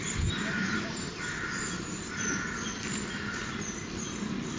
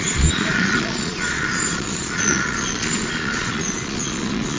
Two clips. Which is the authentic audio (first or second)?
first